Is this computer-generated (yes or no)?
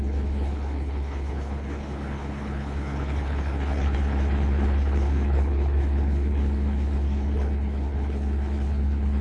yes